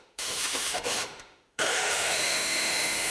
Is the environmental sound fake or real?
fake